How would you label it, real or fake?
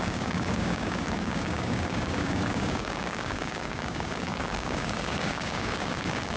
fake